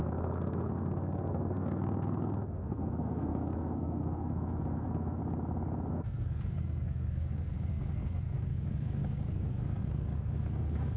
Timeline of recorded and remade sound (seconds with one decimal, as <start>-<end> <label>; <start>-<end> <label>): 0.0-5.2 remade; 5.2-5.9 recorded; 5.9-11.0 remade